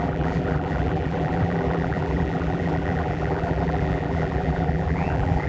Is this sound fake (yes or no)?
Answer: yes